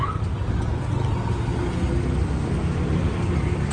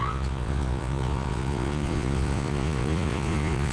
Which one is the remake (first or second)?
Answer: second